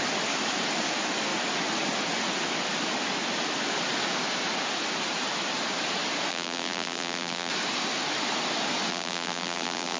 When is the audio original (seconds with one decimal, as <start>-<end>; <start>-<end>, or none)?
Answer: 0.0-6.3; 7.5-8.9